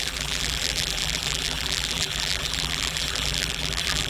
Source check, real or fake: fake